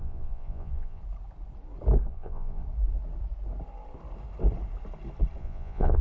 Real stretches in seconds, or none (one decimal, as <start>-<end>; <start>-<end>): 1.0-2.1; 2.6-5.4